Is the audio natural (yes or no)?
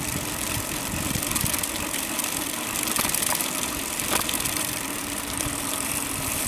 no